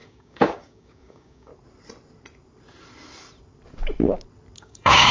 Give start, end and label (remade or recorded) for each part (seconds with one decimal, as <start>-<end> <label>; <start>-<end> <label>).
0.0-1.5 remade; 1.5-4.6 recorded; 4.6-5.1 remade